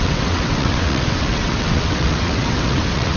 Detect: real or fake fake